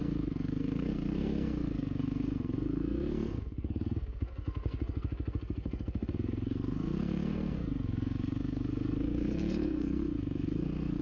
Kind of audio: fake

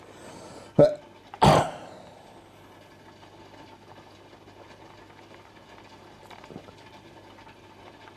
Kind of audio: real